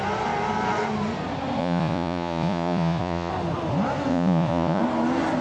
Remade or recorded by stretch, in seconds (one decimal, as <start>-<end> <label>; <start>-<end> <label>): 0.0-1.6 recorded; 1.6-3.3 remade; 3.3-4.1 recorded; 4.1-4.8 remade; 4.8-5.4 recorded

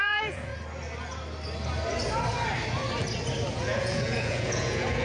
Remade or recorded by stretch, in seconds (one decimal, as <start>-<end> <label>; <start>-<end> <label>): 0.0-0.5 remade; 0.5-3.5 recorded; 3.5-5.0 remade